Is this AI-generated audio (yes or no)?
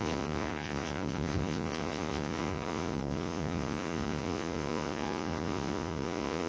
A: yes